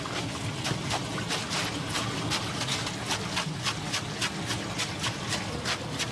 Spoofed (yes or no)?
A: no